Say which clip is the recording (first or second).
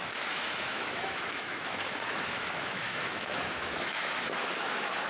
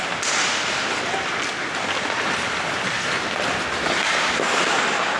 second